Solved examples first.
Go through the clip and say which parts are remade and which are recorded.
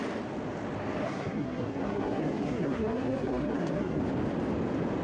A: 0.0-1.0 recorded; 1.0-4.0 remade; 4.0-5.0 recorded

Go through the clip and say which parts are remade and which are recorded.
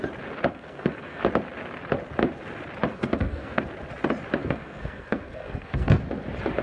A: 0.0-0.5 recorded; 0.5-1.2 remade; 1.2-2.9 recorded; 2.9-3.6 remade; 3.6-4.4 recorded; 4.4-6.0 remade; 6.0-6.6 recorded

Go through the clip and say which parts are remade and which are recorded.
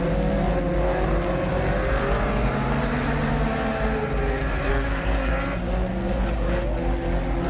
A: 0.0-4.7 recorded; 4.7-5.3 remade; 5.3-7.5 recorded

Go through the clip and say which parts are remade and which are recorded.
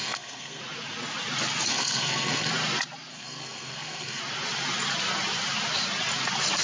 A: 0.0-0.6 remade; 0.6-1.7 recorded; 1.7-2.5 remade; 2.5-3.1 recorded; 3.1-4.2 remade; 4.2-6.6 recorded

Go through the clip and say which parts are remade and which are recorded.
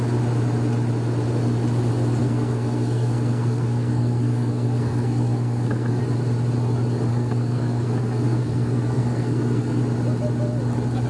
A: 0.0-2.2 recorded; 2.2-6.0 remade; 6.0-7.1 recorded; 7.1-9.8 remade; 9.8-11.1 recorded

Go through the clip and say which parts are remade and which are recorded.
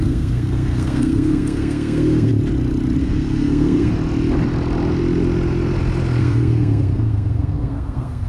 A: 0.0-2.3 remade; 2.3-3.0 recorded; 3.0-3.9 remade; 3.9-6.2 recorded; 6.2-8.3 remade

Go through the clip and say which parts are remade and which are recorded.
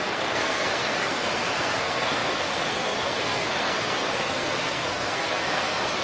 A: 0.0-6.0 remade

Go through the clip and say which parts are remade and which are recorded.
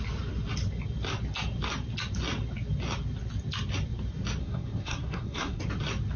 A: 0.0-4.4 recorded; 4.4-5.6 remade; 5.6-6.2 recorded